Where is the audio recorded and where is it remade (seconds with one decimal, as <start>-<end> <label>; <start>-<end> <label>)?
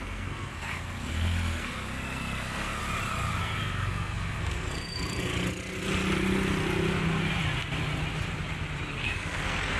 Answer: 0.0-2.8 remade; 2.8-3.4 recorded; 3.4-5.3 remade; 5.3-8.9 recorded; 8.9-9.8 remade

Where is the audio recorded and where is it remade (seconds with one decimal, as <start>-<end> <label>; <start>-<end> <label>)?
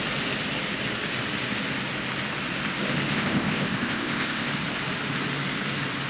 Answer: 0.0-3.1 recorded; 3.1-4.5 remade; 4.5-6.1 recorded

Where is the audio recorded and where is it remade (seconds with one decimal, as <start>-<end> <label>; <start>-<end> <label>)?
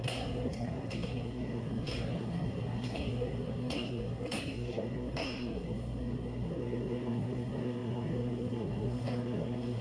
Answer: 0.0-9.8 remade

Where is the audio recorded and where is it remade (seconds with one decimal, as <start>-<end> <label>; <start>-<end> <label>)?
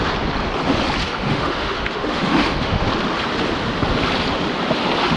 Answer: 0.0-1.0 recorded; 1.0-2.9 remade; 2.9-5.2 recorded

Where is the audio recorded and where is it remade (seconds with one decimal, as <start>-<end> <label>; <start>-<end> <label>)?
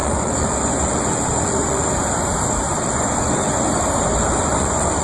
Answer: 0.0-1.8 remade; 1.8-2.7 recorded; 2.7-3.4 remade; 3.4-4.4 recorded; 4.4-5.0 remade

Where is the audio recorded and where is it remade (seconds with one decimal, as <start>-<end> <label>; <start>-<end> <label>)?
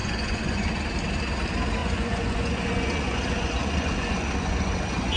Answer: 0.0-0.7 remade; 0.7-1.8 recorded; 1.8-5.2 remade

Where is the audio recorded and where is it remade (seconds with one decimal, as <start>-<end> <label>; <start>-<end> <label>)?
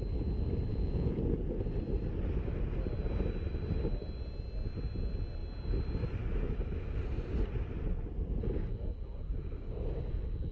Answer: 0.0-0.7 recorded; 0.7-1.2 remade; 1.2-10.5 recorded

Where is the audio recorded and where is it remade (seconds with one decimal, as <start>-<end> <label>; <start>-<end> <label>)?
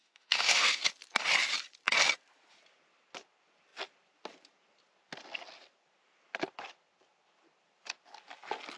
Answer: 0.0-0.8 remade; 0.8-8.8 recorded